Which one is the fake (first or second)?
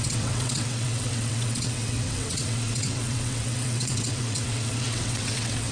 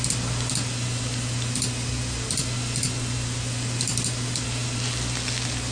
first